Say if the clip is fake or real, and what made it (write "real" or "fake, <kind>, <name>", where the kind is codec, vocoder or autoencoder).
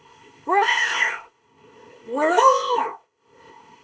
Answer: fake, codec, ZipCodec